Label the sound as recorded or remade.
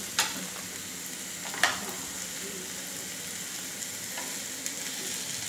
recorded